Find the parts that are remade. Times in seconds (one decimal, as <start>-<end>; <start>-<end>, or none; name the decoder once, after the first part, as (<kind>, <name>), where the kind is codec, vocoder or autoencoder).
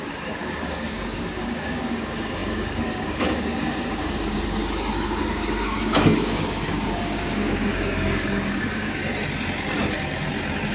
0.0-9.0 (codec, DAC)